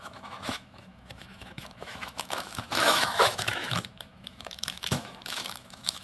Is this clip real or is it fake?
fake